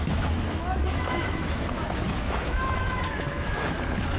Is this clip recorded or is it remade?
remade